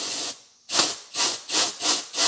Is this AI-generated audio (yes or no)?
yes